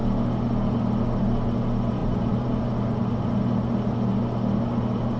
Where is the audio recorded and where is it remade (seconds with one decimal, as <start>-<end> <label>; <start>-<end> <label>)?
0.0-2.0 recorded; 2.0-2.6 remade; 2.6-5.2 recorded